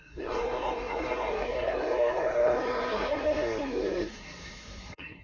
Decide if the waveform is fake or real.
fake